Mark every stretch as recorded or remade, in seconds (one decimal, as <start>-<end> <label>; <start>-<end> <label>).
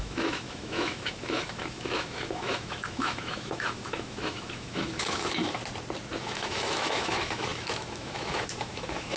0.0-5.6 remade; 5.6-6.2 recorded; 6.2-9.2 remade